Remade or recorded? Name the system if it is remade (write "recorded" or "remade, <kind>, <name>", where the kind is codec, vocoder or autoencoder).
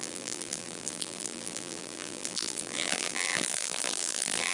remade, vocoder, BigVGAN v2